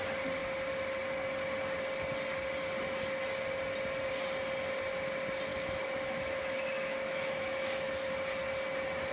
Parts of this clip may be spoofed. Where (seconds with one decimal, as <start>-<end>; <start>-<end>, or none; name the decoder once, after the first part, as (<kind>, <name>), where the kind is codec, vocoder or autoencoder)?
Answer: 5.5-8.1 (autoencoder, DAC-VAE)